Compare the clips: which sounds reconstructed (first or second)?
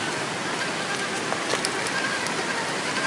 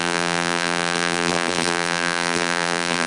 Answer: second